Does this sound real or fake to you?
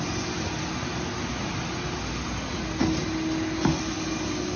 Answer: real